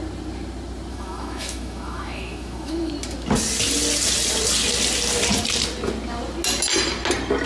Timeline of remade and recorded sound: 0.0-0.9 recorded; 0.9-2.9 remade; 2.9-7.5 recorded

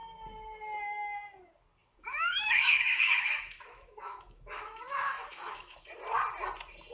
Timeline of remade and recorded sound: 0.0-1.8 recorded; 1.8-5.9 remade; 5.9-6.9 recorded

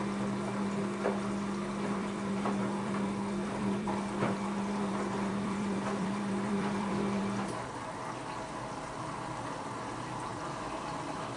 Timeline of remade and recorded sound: 0.0-2.0 recorded; 2.0-7.2 remade; 7.2-10.3 recorded; 10.3-11.4 remade

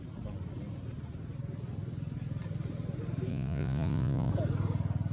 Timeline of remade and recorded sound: 0.0-3.3 recorded; 3.3-4.3 remade; 4.3-5.1 recorded

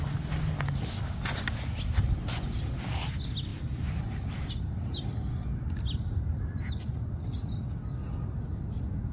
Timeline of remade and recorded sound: 0.0-9.1 recorded

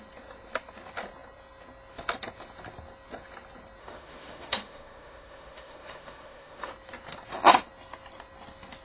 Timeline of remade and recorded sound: 0.0-3.8 recorded; 3.8-6.7 remade; 6.7-8.8 recorded

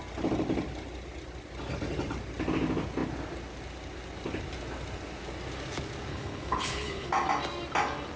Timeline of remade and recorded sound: 0.0-6.1 recorded; 6.1-7.1 remade; 7.1-8.2 recorded

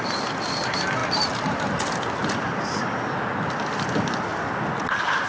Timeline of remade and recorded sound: 0.0-1.0 remade; 1.0-3.7 recorded; 3.7-4.3 remade; 4.3-5.3 recorded